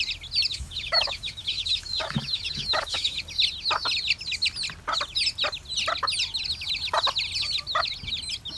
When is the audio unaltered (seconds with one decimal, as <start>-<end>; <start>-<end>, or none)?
0.0-0.5; 3.2-8.6